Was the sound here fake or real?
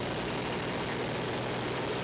real